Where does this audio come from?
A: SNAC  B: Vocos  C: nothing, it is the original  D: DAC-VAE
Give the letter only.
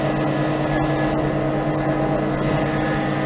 C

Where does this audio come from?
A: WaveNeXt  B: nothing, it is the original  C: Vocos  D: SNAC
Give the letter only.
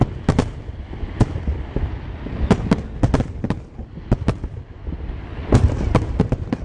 B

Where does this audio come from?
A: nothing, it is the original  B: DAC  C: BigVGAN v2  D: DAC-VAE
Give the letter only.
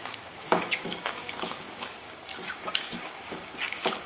B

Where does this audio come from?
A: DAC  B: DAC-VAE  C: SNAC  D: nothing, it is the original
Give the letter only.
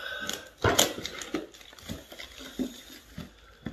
D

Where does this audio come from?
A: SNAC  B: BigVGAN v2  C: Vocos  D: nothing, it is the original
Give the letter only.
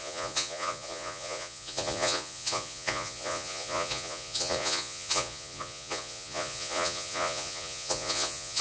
C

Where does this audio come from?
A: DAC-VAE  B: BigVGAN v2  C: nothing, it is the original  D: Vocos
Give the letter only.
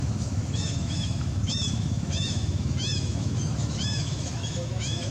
A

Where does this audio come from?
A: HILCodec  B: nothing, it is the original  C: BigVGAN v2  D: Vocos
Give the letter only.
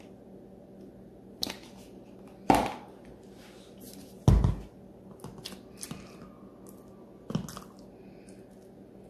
B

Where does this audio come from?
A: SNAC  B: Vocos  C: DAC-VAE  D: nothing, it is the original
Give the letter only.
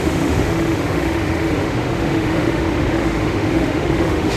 C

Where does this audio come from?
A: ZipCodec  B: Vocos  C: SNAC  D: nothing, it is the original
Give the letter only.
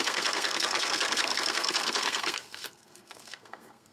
C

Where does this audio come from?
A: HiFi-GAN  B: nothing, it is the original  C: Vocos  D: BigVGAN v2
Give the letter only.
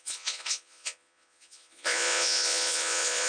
C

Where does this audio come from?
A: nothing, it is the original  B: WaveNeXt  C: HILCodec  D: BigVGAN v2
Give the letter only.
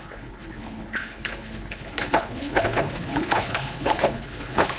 C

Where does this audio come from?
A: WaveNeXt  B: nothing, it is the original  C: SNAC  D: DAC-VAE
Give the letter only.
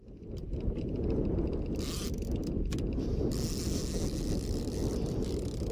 B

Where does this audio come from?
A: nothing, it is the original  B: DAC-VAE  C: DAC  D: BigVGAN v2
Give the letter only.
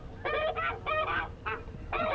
A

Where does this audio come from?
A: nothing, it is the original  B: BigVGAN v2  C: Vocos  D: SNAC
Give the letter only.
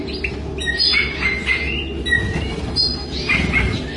A